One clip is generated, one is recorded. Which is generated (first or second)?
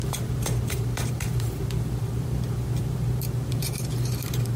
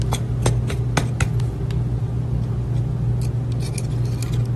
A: first